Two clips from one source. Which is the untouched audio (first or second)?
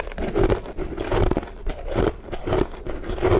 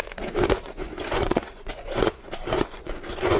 first